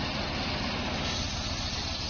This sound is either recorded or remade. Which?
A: recorded